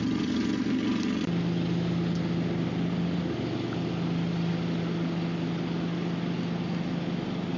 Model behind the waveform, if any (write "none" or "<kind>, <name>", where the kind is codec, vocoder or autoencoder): none